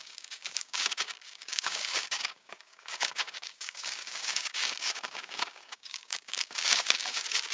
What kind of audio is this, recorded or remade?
remade